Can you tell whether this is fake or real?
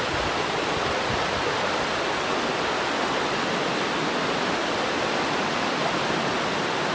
real